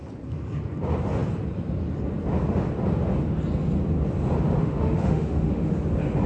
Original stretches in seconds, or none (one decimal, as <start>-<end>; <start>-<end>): 0.0-4.6; 5.7-6.3